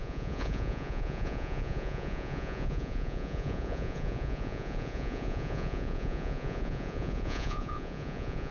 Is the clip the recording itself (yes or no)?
no